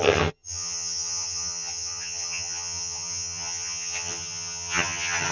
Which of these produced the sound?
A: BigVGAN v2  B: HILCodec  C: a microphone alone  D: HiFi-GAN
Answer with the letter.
D